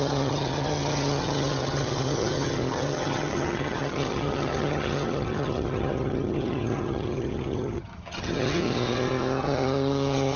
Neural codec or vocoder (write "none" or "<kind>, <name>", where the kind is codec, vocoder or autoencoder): vocoder, HiFi-GAN